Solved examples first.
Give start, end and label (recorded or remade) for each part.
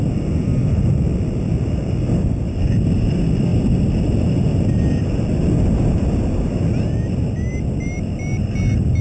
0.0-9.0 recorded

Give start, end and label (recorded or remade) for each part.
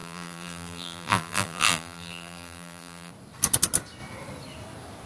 0.0-3.1 remade; 3.1-5.1 recorded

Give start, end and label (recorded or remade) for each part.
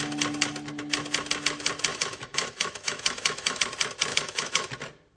0.0-1.9 recorded; 1.9-3.6 remade; 3.6-4.1 recorded; 4.1-4.7 remade; 4.7-5.2 recorded